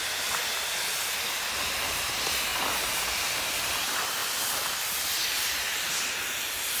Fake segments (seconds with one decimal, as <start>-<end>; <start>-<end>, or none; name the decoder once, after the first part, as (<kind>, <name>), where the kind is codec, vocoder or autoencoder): 2.5-3.7 (vocoder, BigVGAN v2); 4.2-5.9